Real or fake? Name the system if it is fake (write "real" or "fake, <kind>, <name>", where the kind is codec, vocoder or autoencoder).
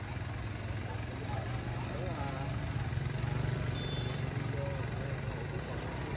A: real